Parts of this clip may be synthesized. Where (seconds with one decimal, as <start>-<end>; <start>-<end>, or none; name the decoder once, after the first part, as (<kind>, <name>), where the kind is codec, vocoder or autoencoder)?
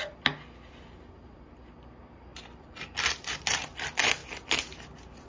2.3-2.8 (vocoder, BigVGAN v2); 4.2-5.3